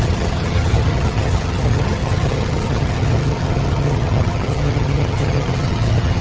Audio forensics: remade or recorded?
remade